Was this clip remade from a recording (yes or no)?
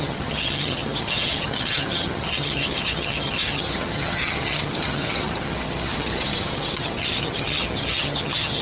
yes